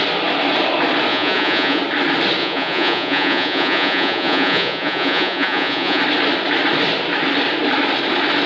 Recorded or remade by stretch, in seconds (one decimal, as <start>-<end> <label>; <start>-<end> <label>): 0.0-1.1 recorded; 1.1-1.8 remade; 1.8-2.4 recorded; 2.4-6.0 remade; 6.0-8.5 recorded